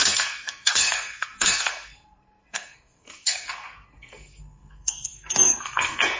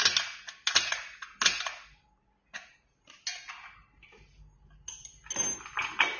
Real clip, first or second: second